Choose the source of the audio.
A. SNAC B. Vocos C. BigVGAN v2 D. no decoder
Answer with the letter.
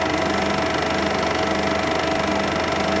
D